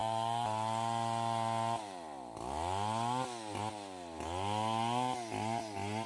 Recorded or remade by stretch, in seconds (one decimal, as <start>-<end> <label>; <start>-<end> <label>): 0.0-6.1 recorded